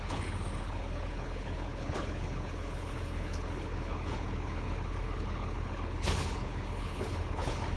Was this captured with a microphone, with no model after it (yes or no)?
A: no